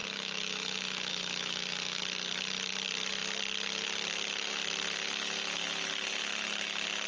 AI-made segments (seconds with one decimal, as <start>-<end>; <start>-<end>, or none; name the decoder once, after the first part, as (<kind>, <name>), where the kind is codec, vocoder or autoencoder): 0.0-2.0 (autoencoder, DAC-VAE)